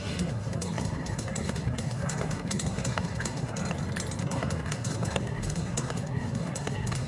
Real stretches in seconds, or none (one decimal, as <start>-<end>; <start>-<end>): 3.6-4.2